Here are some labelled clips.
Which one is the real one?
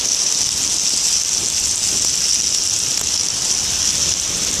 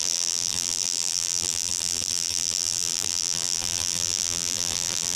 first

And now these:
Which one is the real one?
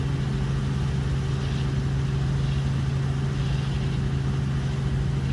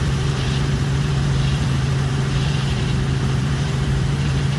first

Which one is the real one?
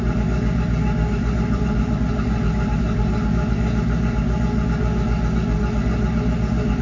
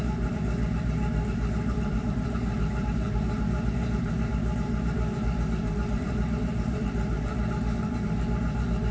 first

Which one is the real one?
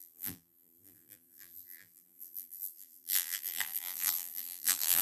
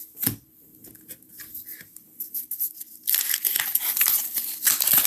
second